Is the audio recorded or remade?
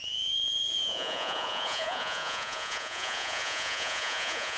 remade